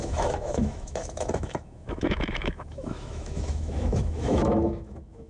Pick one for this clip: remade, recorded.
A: remade